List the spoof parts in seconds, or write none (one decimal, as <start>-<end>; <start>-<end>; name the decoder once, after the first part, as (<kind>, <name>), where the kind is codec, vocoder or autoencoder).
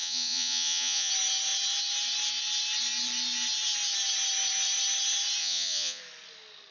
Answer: 0.0-1.1 (vocoder, Vocos); 5.4-6.0